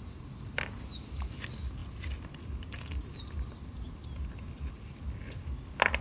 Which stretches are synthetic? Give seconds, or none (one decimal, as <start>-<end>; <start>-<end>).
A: none